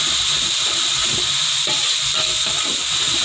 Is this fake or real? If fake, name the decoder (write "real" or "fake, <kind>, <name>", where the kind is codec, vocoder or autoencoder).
real